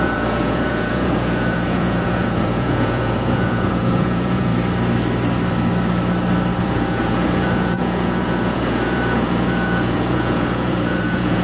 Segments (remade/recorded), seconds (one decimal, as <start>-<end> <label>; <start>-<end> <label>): 0.0-4.5 remade; 4.5-6.6 recorded; 6.6-11.4 remade